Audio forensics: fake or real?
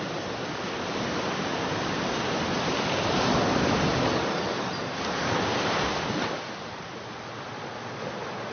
real